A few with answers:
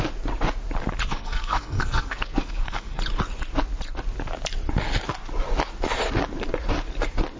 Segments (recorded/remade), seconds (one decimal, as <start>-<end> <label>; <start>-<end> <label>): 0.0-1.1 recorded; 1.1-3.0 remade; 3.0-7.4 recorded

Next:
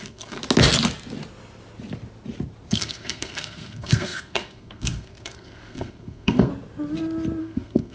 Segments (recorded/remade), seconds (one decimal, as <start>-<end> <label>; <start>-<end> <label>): 0.0-0.4 remade; 0.4-2.7 recorded; 2.7-6.5 remade; 6.5-7.4 recorded; 7.4-7.9 remade

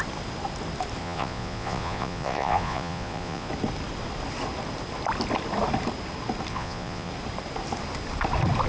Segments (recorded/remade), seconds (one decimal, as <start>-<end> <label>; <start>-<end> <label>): 0.0-1.0 recorded; 1.0-3.5 remade; 3.5-6.5 recorded; 6.5-7.1 remade; 7.1-8.7 recorded

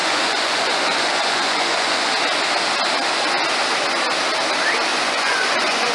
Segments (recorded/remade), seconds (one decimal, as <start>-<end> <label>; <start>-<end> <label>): 0.0-2.1 remade; 2.1-4.9 recorded; 4.9-5.9 remade

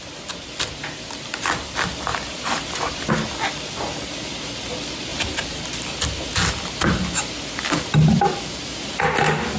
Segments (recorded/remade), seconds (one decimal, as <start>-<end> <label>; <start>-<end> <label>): 0.0-2.1 recorded; 2.1-3.1 remade; 3.1-5.1 recorded; 5.1-5.6 remade; 5.6-9.6 recorded

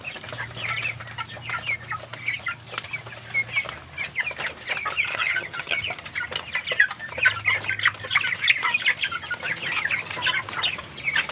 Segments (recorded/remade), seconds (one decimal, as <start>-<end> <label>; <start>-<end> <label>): 0.0-5.1 recorded; 5.1-5.8 remade; 5.8-11.3 recorded

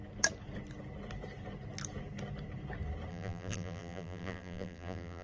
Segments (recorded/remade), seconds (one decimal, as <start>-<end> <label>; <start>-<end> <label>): 0.0-3.1 recorded; 3.1-5.2 remade

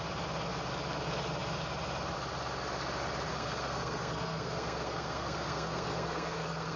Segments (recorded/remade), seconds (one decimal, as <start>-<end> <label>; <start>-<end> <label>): 0.0-3.3 recorded; 3.3-6.8 remade